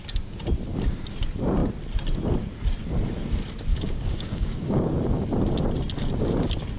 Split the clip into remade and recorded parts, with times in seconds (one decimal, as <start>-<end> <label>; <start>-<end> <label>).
0.0-3.7 recorded; 3.7-4.9 remade; 4.9-6.8 recorded